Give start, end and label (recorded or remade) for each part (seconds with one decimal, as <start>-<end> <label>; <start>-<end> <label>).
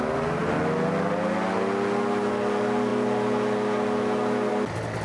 0.0-5.0 recorded